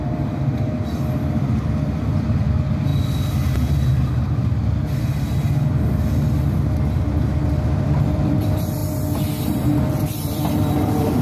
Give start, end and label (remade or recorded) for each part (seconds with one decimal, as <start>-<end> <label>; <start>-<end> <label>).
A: 0.0-2.9 remade; 2.9-7.4 recorded; 7.4-8.8 remade; 8.8-9.8 recorded; 9.8-11.2 remade